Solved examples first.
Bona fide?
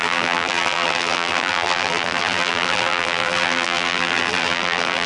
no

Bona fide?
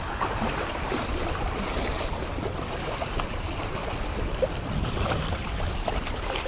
no